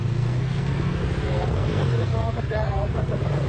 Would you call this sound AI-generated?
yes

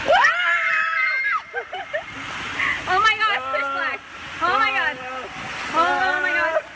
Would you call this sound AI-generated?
no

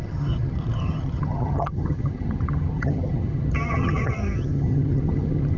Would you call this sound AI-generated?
yes